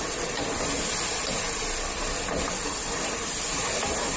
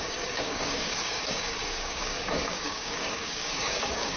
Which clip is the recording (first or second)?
first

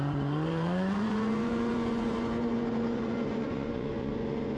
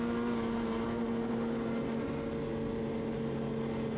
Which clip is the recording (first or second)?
second